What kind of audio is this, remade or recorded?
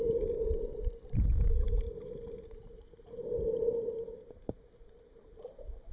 remade